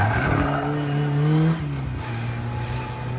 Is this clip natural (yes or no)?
yes